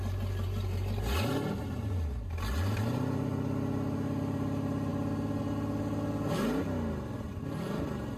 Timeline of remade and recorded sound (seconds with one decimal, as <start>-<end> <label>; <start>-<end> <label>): 0.0-8.2 recorded